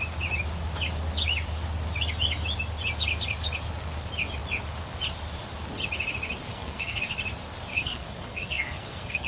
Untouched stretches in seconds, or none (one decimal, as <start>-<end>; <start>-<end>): 0.0-6.5; 7.0-7.7